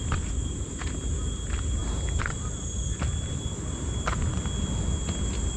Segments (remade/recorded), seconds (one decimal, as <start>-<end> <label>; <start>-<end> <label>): 0.0-5.6 recorded